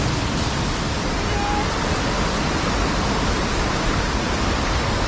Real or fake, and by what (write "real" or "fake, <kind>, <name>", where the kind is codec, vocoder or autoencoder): real